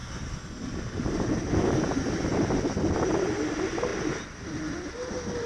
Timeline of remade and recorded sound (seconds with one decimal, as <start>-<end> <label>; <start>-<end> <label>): 0.0-5.5 recorded